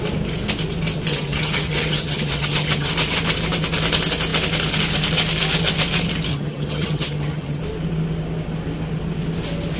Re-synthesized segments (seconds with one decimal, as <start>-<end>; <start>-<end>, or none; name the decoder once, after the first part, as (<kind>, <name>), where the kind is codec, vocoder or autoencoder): 1.1-2.9 (vocoder, HiFi-GAN); 6.3-7.6